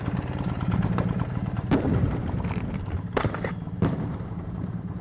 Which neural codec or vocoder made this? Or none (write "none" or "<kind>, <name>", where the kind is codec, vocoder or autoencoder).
vocoder, BigVGAN v2